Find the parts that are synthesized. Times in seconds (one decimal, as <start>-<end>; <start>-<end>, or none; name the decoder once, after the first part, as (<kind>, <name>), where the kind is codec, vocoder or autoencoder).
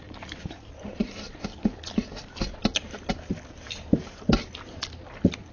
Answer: none